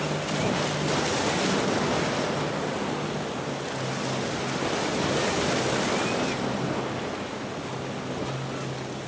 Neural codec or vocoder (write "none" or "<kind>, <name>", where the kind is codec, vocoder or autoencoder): none